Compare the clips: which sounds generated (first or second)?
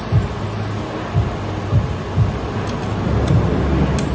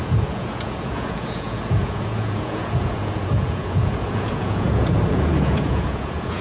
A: second